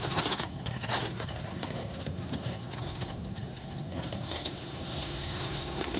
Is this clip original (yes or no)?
no